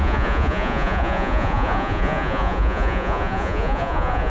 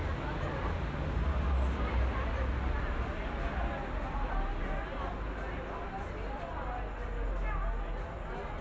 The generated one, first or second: first